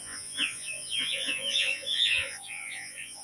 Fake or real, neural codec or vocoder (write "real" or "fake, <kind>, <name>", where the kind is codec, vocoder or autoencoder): fake, vocoder, Vocos